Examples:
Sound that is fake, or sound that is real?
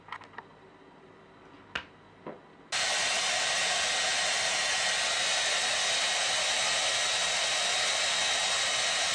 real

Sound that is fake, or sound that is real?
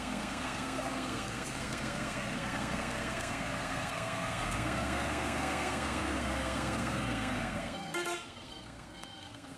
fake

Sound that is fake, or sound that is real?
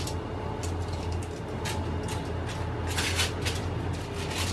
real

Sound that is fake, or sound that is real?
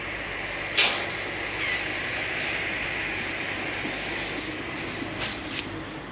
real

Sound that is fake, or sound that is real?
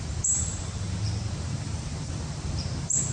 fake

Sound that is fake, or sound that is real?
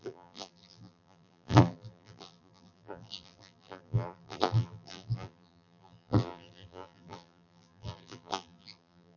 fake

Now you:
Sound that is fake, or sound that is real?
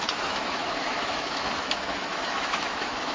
fake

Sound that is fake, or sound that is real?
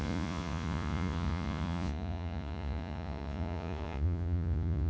fake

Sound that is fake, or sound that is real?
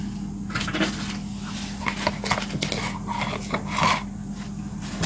real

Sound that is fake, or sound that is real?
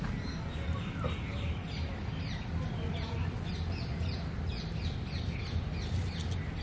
real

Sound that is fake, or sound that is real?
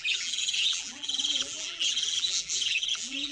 fake